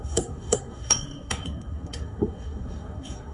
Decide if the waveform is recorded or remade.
remade